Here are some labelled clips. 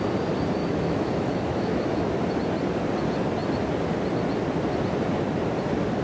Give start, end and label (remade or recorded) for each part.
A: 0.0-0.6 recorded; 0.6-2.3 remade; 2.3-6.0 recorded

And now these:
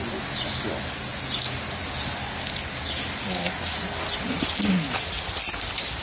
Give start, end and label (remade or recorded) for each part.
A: 0.0-6.0 recorded

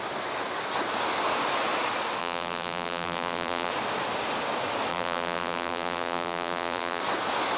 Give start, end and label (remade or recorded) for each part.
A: 0.0-2.2 recorded; 2.2-3.7 remade; 3.7-4.9 recorded; 4.9-7.0 remade; 7.0-7.6 recorded

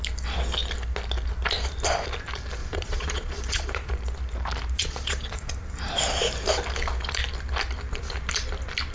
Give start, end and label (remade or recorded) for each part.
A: 0.0-2.6 recorded; 2.6-3.9 remade; 3.9-4.8 recorded; 4.8-5.5 remade; 5.5-8.9 recorded

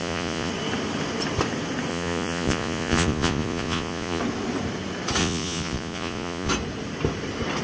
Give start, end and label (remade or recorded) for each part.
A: 0.0-0.5 remade; 0.5-1.9 recorded; 1.9-4.2 remade; 4.2-5.2 recorded; 5.2-6.5 remade; 6.5-7.6 recorded